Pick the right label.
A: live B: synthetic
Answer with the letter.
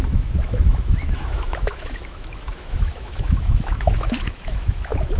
B